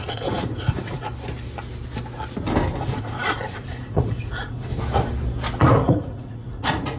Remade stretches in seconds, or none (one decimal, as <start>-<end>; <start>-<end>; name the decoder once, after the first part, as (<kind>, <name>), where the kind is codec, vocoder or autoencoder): 0.0-1.1 (vocoder, Vocos); 2.8-4.7; 5.6-7.0